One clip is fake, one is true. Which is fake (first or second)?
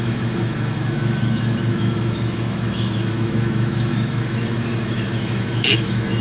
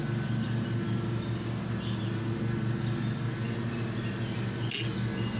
first